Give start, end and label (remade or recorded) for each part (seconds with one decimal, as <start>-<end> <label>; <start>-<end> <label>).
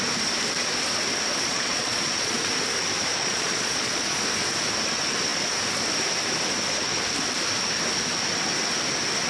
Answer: 0.0-1.4 recorded; 1.4-2.5 remade; 2.5-3.1 recorded; 3.1-4.2 remade; 4.2-9.3 recorded